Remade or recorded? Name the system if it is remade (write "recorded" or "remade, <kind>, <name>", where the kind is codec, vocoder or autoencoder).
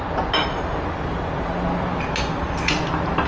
recorded